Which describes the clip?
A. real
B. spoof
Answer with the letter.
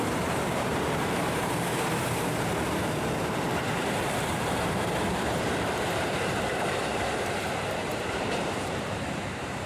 B